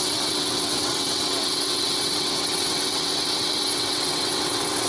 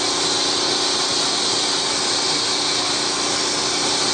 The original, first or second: second